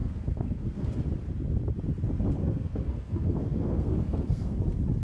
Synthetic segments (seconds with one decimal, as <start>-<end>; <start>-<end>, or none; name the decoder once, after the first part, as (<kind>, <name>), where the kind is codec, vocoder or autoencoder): 0.0-1.0 (codec, SNAC); 2.4-4.6